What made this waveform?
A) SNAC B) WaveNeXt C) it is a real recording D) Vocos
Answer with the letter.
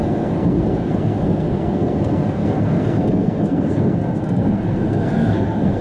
A